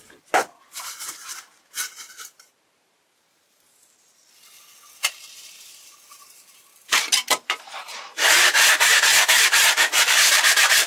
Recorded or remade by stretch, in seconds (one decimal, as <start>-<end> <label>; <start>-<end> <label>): 0.0-4.2 remade; 4.2-5.3 recorded; 5.3-10.9 remade